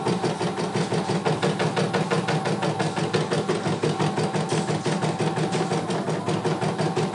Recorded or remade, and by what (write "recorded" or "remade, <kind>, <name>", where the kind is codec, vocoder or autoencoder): recorded